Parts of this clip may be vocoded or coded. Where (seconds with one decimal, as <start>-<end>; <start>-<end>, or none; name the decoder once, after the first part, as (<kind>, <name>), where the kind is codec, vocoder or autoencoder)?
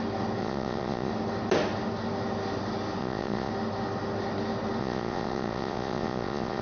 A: 0.4-1.1 (vocoder, Vocos); 3.0-3.5; 4.8-6.6